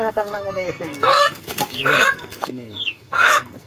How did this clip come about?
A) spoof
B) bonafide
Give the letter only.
A